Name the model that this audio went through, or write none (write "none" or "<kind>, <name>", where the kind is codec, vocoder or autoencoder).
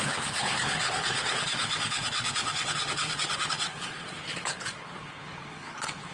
codec, HILCodec